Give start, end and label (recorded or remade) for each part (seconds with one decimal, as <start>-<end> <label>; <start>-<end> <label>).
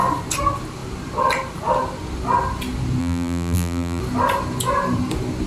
0.0-3.0 recorded; 3.0-4.0 remade; 4.0-5.5 recorded